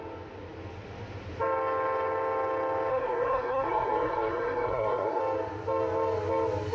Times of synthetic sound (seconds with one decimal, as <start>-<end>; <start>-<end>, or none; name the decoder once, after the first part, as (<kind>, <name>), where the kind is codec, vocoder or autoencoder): 2.9-5.2 (codec, SNAC)